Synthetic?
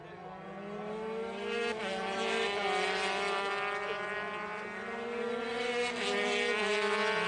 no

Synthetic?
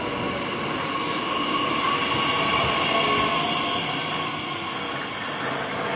no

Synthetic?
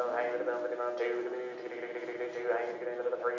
no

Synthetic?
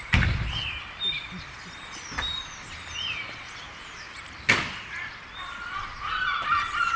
no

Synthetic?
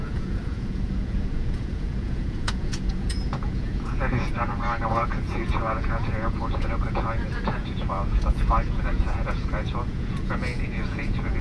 yes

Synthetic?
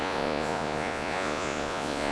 yes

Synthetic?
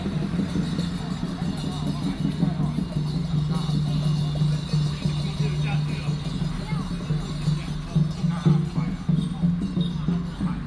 no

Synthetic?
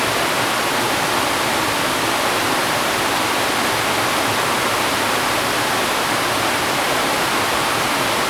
no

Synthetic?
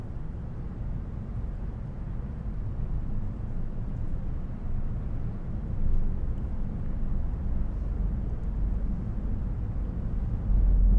no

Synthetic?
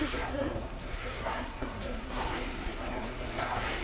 yes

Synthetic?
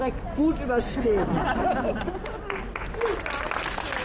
no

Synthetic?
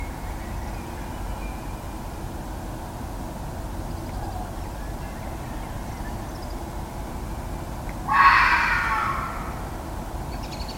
no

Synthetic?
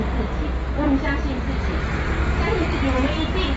no